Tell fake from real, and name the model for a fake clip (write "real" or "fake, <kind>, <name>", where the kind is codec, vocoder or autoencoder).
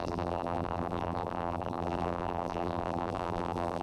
fake, vocoder, BigVGAN v2